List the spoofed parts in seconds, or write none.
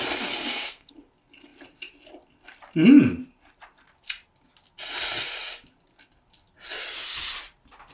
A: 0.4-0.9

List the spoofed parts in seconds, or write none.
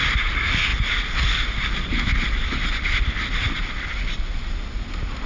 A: none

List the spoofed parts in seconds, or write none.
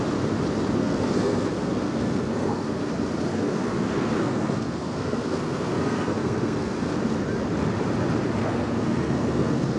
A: 0.8-2.9; 3.3-6.9; 8.4-9.8